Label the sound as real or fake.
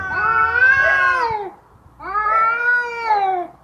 real